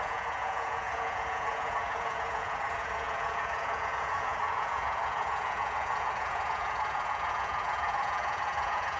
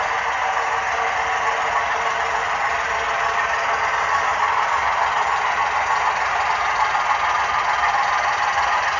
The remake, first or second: first